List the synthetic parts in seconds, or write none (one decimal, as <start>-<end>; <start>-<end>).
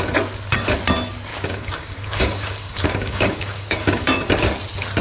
1.3-4.3